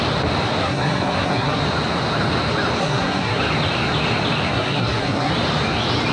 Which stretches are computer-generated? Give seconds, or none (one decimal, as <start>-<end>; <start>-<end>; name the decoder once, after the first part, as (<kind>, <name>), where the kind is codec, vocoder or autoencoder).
0.6-1.6 (codec, SNAC); 2.8-3.4; 4.5-5.3